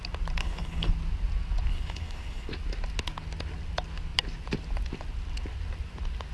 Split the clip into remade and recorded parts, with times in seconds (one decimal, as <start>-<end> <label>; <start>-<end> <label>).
0.0-0.4 recorded; 0.4-0.9 remade; 0.9-1.7 recorded; 1.7-2.5 remade; 2.5-6.3 recorded